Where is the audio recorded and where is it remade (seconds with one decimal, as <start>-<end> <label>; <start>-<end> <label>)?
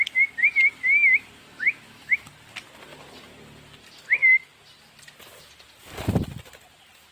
0.0-1.4 recorded; 1.4-2.3 remade; 2.3-7.1 recorded